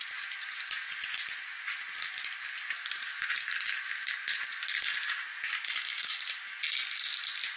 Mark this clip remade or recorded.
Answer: recorded